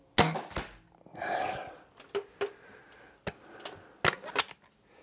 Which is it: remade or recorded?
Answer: recorded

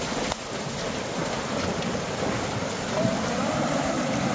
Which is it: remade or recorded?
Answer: recorded